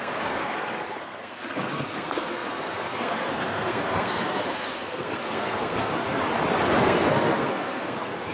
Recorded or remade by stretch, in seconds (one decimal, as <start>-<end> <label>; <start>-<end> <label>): 0.0-6.2 remade; 6.2-6.8 recorded; 6.8-8.3 remade